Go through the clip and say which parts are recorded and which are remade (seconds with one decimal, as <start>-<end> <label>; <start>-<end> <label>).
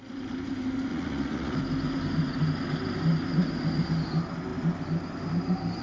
0.0-0.9 recorded; 0.9-1.6 remade; 1.6-5.8 recorded